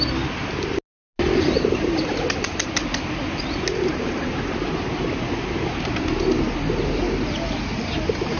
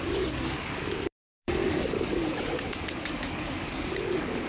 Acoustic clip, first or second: first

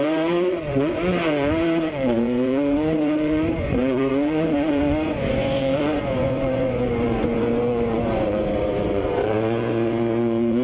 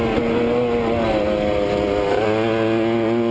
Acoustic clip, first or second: second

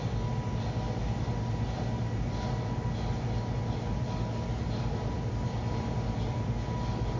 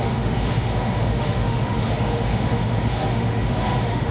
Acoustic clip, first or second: first